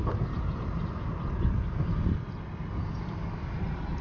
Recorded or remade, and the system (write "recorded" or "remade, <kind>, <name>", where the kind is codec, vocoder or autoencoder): recorded